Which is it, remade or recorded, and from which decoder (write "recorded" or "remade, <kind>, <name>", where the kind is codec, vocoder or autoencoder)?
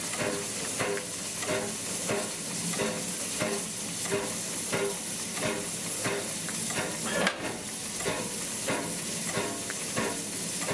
recorded